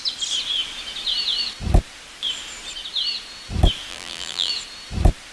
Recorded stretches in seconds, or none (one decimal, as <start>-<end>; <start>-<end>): 0.0-3.9; 4.5-5.3